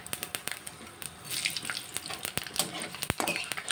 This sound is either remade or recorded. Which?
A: recorded